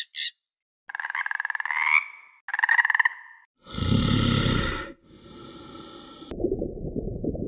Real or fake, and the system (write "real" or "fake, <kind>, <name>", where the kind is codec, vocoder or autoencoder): real